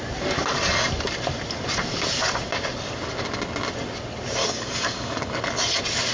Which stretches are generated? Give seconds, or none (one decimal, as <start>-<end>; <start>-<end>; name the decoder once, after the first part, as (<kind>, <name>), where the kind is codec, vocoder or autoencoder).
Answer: 4.4-5.4 (codec, DAC)